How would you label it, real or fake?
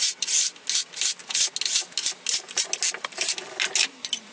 real